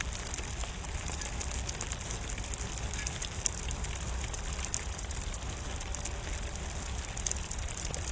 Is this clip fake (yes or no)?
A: no